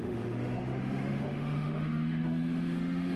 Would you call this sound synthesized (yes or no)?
yes